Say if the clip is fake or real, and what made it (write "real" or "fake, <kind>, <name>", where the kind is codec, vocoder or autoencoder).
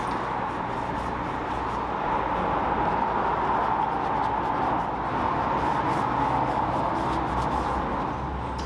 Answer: real